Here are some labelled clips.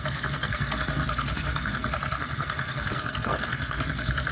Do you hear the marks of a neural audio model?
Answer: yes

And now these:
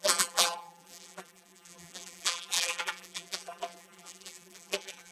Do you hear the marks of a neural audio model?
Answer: yes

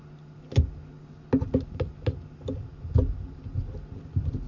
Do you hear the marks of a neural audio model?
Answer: no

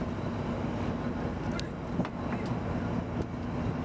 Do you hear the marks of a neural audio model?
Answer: no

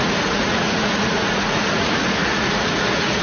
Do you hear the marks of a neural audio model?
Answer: yes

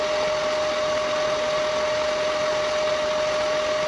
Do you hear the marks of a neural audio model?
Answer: no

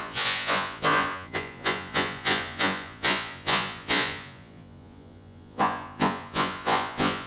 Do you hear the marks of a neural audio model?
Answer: yes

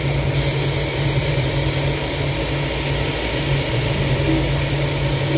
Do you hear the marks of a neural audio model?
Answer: no